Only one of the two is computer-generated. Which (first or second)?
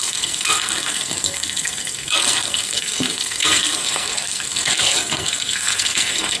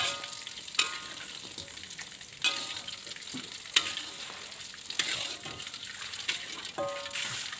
first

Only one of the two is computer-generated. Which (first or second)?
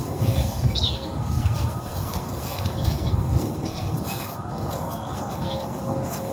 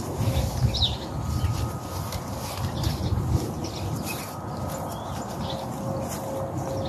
first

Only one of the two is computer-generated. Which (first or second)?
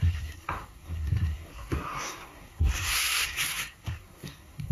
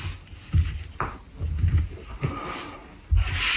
first